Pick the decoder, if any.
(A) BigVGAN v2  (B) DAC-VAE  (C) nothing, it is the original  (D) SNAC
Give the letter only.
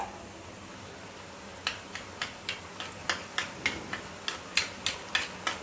C